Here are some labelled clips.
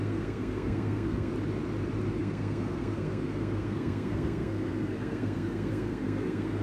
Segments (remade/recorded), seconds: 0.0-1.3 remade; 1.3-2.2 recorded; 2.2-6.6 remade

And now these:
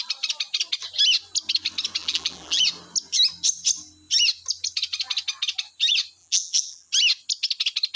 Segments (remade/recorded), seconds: 0.0-2.0 recorded; 2.0-2.6 remade; 2.6-6.2 recorded; 6.2-6.9 remade; 6.9-8.0 recorded

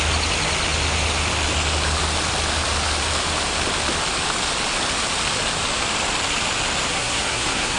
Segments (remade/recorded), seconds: 0.0-6.9 recorded; 6.9-7.8 remade

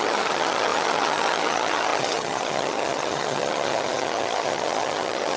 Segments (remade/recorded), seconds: 0.0-5.4 remade

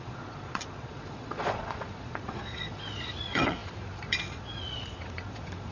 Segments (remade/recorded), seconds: 0.0-5.7 remade

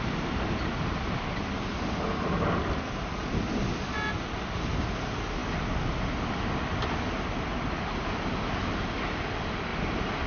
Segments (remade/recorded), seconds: 0.0-10.3 recorded

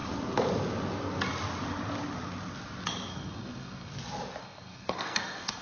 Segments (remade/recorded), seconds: 0.0-3.1 recorded; 3.1-3.9 remade; 3.9-4.4 recorded; 4.4-5.6 remade

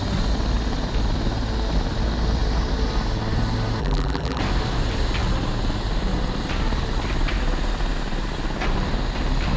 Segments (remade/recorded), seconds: 0.0-3.8 recorded; 3.8-4.4 remade; 4.4-9.6 recorded